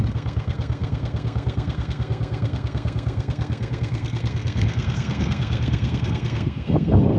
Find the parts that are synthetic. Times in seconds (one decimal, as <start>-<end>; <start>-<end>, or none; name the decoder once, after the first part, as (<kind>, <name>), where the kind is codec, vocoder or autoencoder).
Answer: 0.0-7.2 (codec, SNAC)